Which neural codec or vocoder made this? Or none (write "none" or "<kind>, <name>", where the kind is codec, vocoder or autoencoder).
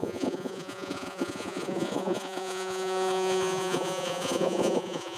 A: vocoder, Vocos